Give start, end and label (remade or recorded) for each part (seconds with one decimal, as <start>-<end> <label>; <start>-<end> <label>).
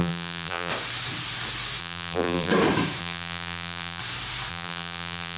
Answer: 0.0-0.7 remade; 0.7-1.8 recorded; 1.8-2.5 remade; 2.5-3.0 recorded; 3.0-4.0 remade; 4.0-4.5 recorded; 4.5-5.4 remade